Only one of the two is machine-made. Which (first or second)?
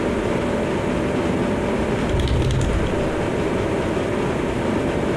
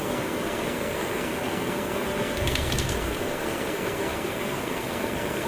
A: second